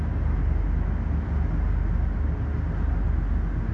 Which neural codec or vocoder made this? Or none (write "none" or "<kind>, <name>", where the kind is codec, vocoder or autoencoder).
none